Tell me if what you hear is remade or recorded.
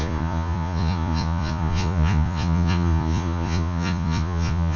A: remade